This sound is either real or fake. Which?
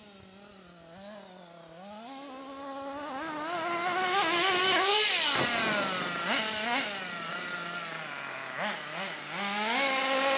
real